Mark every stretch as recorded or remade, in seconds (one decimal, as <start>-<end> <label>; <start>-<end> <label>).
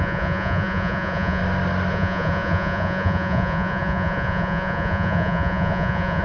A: 0.0-1.4 remade; 1.4-1.9 recorded; 1.9-6.2 remade